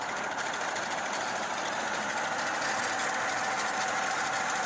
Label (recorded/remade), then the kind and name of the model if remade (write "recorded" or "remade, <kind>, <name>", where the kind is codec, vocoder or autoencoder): recorded